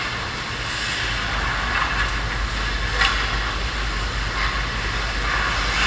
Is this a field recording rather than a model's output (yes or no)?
yes